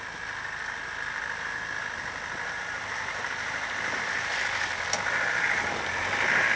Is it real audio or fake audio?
real